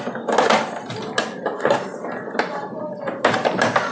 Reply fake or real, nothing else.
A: real